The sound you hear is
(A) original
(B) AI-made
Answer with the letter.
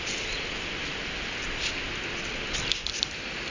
A